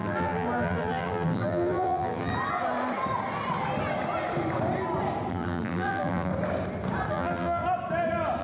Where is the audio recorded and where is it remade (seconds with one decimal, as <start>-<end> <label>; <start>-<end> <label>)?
0.0-2.3 remade; 2.3-5.3 recorded; 5.3-6.3 remade; 6.3-7.1 recorded; 7.1-7.6 remade; 7.6-8.4 recorded